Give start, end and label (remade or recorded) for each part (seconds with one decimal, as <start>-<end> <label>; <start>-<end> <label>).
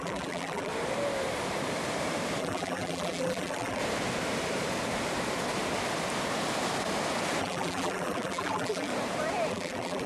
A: 0.0-0.7 remade; 0.7-2.4 recorded; 2.4-3.8 remade; 3.8-7.4 recorded; 7.4-8.9 remade; 8.9-9.5 recorded; 9.5-10.1 remade